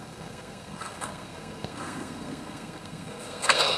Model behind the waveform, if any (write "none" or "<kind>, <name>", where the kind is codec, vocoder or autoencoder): codec, SNAC